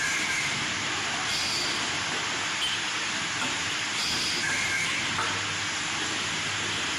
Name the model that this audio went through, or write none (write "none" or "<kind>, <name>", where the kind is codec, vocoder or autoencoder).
none